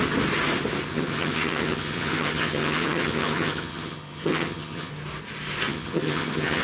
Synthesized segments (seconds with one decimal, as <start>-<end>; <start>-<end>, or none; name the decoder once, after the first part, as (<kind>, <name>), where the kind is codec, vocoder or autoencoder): 0.9-4.9 (vocoder, HiFi-GAN); 5.7-6.6